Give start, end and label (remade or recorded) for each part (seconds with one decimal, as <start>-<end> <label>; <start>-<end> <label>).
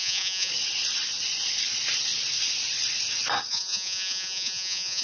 0.0-0.5 remade; 0.5-3.5 recorded; 3.5-5.0 remade